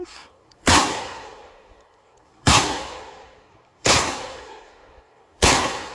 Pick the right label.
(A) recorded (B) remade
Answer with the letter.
B